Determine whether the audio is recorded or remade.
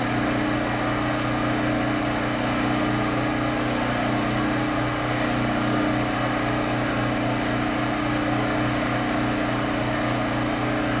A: recorded